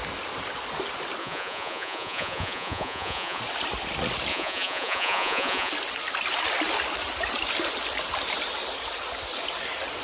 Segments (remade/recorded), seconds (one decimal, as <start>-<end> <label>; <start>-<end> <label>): 0.0-1.2 recorded; 1.2-3.4 remade; 3.4-4.3 recorded; 4.3-5.7 remade; 5.7-10.0 recorded